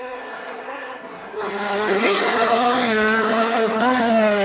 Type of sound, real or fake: fake